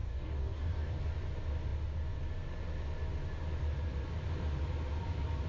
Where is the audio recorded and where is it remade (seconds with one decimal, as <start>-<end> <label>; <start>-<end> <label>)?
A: 0.0-0.9 remade; 0.9-5.5 recorded